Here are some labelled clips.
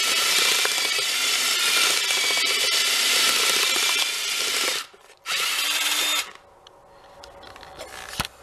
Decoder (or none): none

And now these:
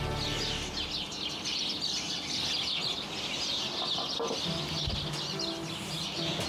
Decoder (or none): none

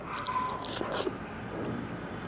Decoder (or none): none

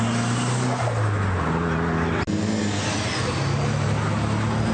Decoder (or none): none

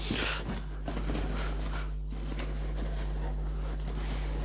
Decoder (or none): none